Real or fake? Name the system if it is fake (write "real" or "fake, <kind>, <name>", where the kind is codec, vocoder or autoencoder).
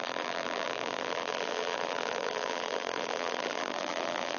fake, vocoder, BigVGAN v2